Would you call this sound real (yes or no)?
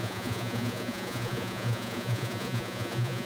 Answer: no